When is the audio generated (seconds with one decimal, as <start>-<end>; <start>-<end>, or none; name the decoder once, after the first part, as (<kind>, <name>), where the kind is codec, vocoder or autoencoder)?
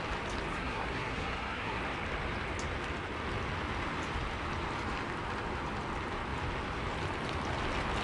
0.5-1.8 (codec, SNAC)